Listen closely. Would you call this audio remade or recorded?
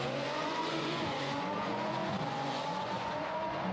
remade